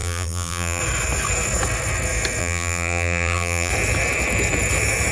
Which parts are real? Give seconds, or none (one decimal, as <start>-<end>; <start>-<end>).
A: 0.8-2.4; 3.7-5.1